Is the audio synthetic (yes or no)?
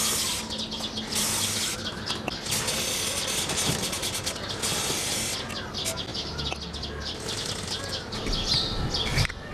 no